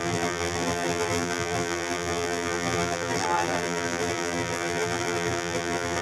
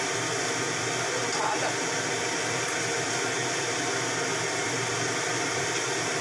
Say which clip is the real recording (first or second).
second